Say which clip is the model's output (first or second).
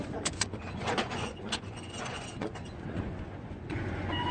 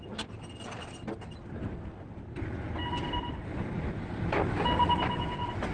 first